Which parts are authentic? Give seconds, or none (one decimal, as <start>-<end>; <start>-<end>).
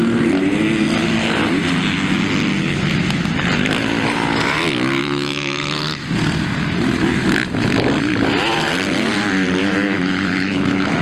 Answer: 0.0-5.0; 6.1-9.6